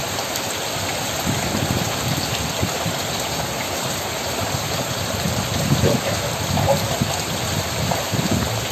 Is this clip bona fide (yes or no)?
yes